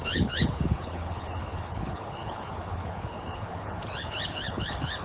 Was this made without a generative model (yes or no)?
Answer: no